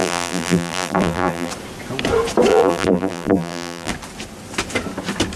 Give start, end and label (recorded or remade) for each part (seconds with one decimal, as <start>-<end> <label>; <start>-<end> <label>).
0.0-1.5 remade; 1.5-2.5 recorded; 2.5-3.9 remade; 3.9-5.4 recorded